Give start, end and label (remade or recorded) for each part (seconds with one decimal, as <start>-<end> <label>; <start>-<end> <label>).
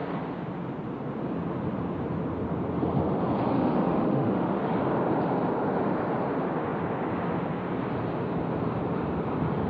0.0-3.5 recorded; 3.5-4.7 remade; 4.7-9.7 recorded